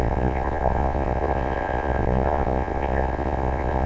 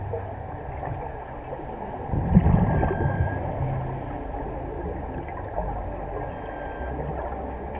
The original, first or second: second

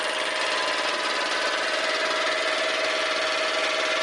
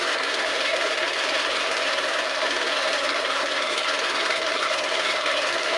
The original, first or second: first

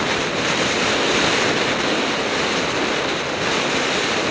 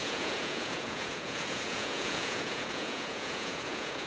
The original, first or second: first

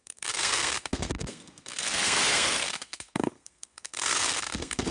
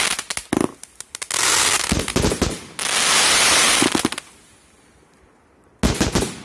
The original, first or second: second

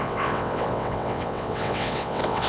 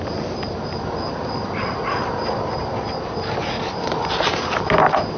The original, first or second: second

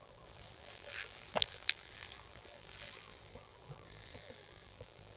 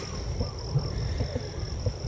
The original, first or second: second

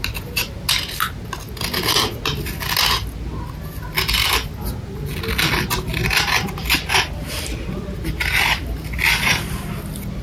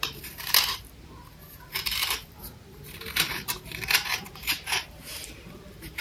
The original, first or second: first